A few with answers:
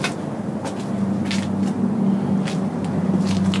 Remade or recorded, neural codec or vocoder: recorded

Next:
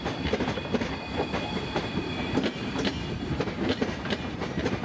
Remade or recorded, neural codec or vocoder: recorded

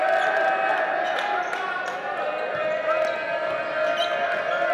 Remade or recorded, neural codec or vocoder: recorded